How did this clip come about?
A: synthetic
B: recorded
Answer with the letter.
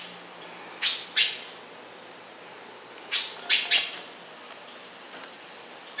B